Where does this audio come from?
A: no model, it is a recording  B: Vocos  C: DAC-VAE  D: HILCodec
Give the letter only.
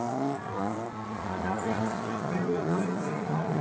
B